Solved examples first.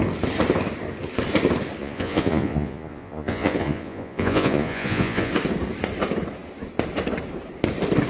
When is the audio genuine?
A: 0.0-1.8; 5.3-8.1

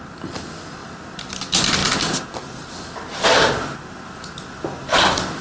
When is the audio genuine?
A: 0.0-5.4

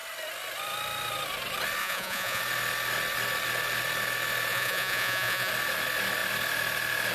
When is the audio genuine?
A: 0.0-1.8; 2.4-4.5; 5.5-7.1